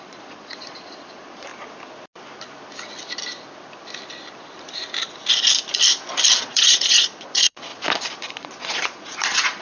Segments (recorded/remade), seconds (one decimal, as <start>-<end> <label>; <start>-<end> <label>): 0.0-1.5 remade; 1.5-6.4 recorded; 6.4-7.7 remade; 7.7-8.3 recorded; 8.3-9.6 remade